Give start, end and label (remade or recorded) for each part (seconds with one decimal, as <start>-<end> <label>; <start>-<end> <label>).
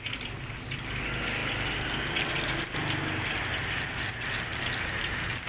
0.0-1.4 recorded; 1.4-3.0 remade; 3.0-5.5 recorded